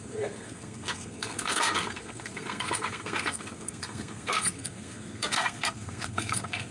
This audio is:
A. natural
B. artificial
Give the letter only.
B